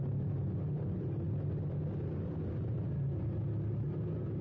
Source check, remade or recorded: recorded